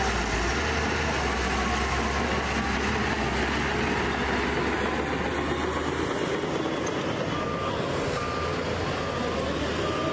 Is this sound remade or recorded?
recorded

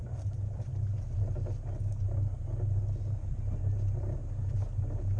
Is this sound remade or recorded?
recorded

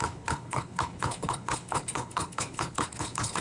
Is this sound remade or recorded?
remade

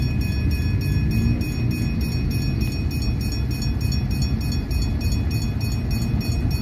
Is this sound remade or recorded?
recorded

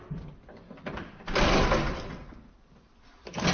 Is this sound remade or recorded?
recorded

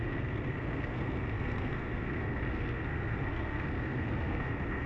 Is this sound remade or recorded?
remade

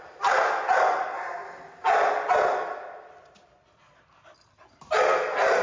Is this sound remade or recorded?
recorded